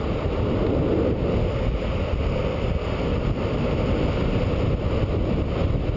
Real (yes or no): yes